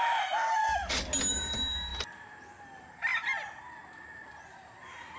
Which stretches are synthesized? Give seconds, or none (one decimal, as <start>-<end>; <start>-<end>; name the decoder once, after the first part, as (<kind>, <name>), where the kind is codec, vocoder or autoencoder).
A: none

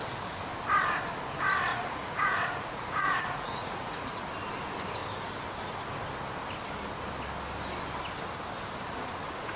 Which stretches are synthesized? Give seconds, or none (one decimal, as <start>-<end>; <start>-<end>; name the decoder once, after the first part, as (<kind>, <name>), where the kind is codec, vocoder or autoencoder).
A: 1.7-4.2 (vocoder, Vocos)

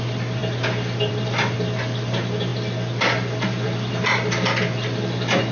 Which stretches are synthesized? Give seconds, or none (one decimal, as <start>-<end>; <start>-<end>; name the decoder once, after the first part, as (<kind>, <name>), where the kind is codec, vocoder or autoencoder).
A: none

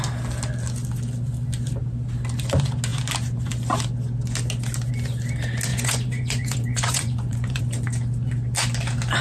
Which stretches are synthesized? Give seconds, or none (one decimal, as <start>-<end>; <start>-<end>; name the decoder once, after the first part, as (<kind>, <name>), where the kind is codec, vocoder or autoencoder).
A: 5.7-7.6 (vocoder, Vocos)

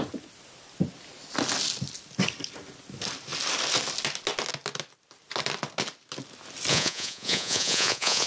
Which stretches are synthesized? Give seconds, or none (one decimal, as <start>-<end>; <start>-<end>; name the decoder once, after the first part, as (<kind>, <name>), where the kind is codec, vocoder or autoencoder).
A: 6.7-8.3 (vocoder, Vocos)

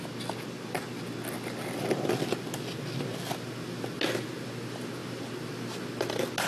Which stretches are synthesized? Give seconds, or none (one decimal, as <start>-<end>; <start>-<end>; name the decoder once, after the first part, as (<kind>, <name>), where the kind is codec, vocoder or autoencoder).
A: none

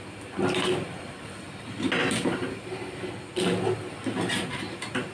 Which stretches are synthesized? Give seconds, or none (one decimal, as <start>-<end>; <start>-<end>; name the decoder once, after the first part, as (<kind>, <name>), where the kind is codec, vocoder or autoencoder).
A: none

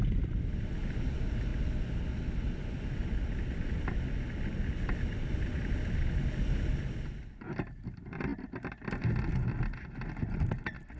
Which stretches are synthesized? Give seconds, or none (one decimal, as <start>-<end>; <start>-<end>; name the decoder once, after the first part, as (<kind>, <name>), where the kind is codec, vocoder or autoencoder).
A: none